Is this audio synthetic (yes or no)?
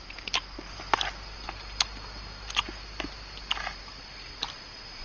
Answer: no